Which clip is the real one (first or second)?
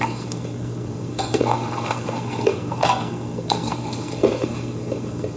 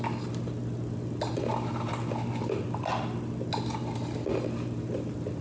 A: second